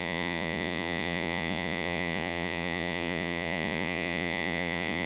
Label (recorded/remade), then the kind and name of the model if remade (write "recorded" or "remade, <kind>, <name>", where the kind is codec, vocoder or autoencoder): remade, vocoder, Vocos